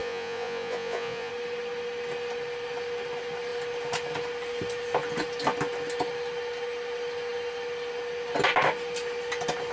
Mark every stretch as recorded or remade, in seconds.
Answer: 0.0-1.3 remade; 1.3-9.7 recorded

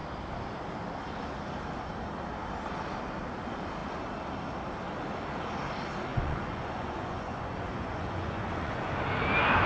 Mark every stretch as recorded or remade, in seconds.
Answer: 0.0-6.1 recorded; 6.1-9.0 remade; 9.0-9.7 recorded